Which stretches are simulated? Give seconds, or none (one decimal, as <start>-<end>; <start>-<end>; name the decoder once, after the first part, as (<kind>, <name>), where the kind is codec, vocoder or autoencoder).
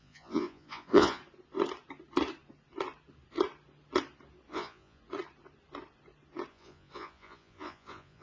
0.0-1.2 (vocoder, Vocos); 4.5-5.0; 6.5-8.2